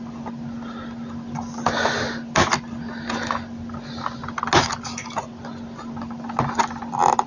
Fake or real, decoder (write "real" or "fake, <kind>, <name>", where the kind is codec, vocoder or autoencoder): real